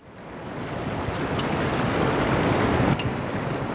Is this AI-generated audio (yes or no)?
no